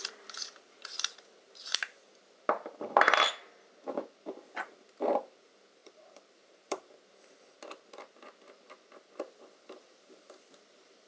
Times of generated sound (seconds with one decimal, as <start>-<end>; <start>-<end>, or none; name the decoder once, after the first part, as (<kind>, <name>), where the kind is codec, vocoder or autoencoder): 5.8-6.8 (vocoder, BigVGAN v2)